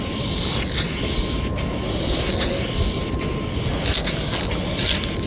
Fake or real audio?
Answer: real